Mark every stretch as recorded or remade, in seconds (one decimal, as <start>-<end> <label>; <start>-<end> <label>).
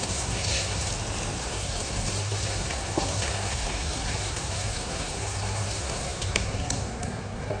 0.0-0.9 remade; 0.9-1.4 recorded; 1.4-7.6 remade